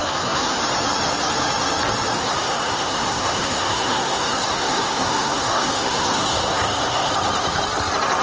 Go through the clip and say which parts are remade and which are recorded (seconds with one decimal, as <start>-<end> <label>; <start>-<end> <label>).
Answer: 0.0-0.6 remade; 0.6-2.2 recorded; 2.2-7.1 remade; 7.1-8.2 recorded